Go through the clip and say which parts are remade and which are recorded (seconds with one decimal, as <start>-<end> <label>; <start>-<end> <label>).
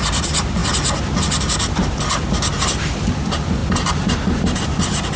0.0-5.2 recorded